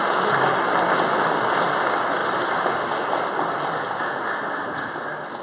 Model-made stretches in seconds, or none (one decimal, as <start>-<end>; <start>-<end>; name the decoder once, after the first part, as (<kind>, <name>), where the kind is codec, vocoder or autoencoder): none